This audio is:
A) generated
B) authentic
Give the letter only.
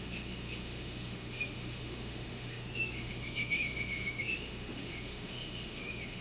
A